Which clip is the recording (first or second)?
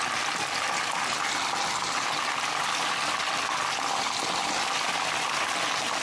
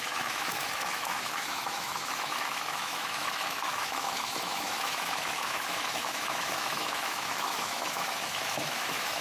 first